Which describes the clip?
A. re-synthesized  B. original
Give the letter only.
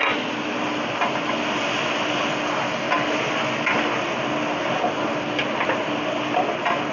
B